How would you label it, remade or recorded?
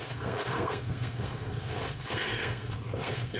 remade